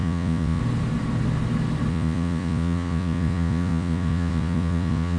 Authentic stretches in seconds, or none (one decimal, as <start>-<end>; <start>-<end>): 0.6-1.9